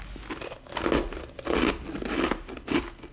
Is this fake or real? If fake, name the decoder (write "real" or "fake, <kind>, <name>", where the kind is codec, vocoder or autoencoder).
real